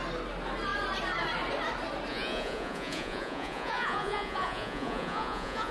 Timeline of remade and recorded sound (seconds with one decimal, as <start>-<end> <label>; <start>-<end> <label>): 0.0-2.1 recorded; 2.1-5.7 remade